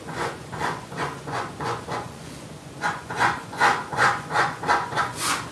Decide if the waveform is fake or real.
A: fake